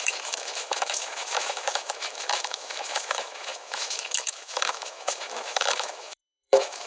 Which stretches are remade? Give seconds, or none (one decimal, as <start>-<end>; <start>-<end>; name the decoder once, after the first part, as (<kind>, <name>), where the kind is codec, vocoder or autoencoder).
0.0-6.9 (autoencoder, DAC-VAE)